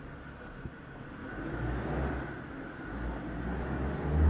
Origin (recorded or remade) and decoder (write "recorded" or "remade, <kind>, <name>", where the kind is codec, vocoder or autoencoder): recorded